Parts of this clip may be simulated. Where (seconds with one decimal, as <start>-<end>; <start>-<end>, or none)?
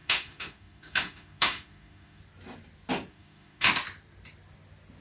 0.0-2.2; 3.1-3.7